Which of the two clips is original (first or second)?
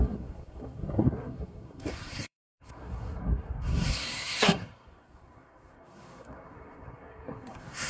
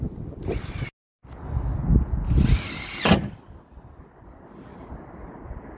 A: second